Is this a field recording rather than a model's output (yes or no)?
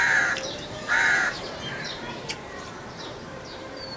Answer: no